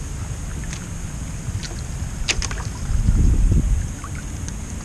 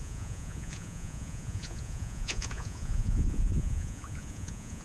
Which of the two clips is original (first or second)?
first